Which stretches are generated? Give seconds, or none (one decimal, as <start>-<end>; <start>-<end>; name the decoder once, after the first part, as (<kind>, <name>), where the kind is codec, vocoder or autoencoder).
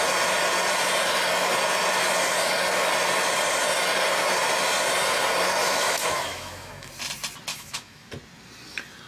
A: 5.6-6.9 (autoencoder, DAC-VAE); 7.5-8.1